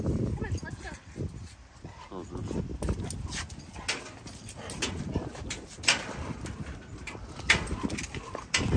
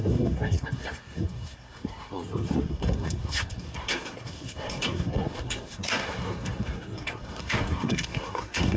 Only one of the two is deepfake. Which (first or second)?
second